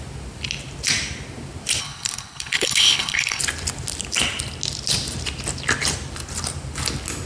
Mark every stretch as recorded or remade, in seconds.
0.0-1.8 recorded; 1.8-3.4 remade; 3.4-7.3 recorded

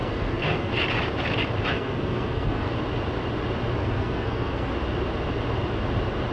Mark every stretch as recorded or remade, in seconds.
0.0-0.7 remade; 0.7-1.7 recorded; 1.7-2.7 remade; 2.7-3.8 recorded; 3.8-4.7 remade; 4.7-6.3 recorded

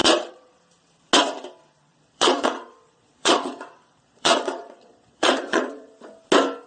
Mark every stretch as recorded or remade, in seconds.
0.0-0.6 remade; 0.6-1.9 recorded; 1.9-5.9 remade; 5.9-6.7 recorded

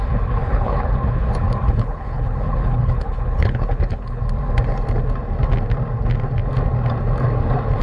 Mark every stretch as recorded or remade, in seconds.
0.0-4.2 remade; 4.2-7.8 recorded

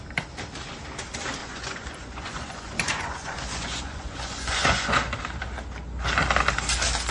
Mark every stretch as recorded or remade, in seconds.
0.0-1.4 recorded; 1.4-5.2 remade; 5.2-7.1 recorded

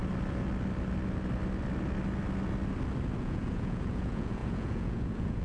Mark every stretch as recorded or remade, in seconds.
0.0-3.2 recorded; 3.2-5.4 remade

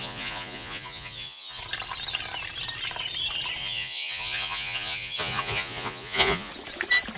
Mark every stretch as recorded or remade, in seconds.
0.0-1.6 remade; 1.6-3.6 recorded; 3.6-6.5 remade; 6.5-7.2 recorded